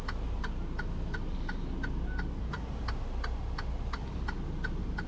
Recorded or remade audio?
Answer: recorded